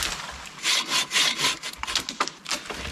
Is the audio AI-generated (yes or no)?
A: no